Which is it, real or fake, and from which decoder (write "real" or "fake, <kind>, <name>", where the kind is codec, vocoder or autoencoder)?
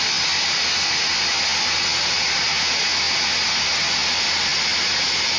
real